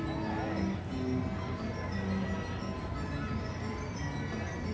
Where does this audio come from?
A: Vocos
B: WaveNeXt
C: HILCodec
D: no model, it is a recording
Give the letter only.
D